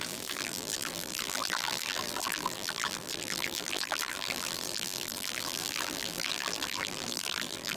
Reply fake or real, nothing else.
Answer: fake